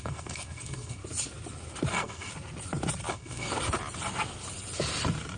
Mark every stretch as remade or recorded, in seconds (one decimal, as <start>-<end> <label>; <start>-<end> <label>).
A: 0.0-1.0 remade; 1.0-1.9 recorded; 1.9-2.3 remade; 2.3-3.1 recorded; 3.1-3.5 remade; 3.5-5.4 recorded